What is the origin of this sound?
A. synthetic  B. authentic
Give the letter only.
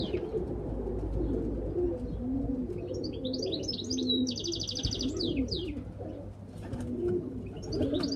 B